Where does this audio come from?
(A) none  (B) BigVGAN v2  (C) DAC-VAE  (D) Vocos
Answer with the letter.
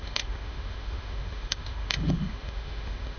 C